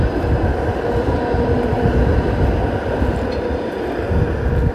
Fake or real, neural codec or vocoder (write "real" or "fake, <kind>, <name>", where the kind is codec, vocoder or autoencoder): real